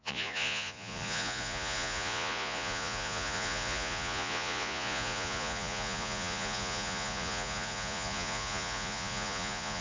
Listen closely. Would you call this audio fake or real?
fake